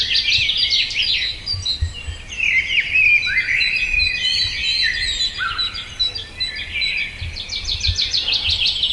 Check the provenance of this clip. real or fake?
fake